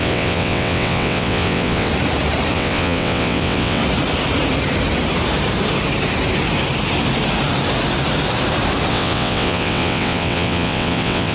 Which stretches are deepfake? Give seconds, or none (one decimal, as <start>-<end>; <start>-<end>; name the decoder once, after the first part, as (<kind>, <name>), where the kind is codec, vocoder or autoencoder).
0.0-1.9 (vocoder, WaveNeXt); 2.5-3.8; 8.9-11.3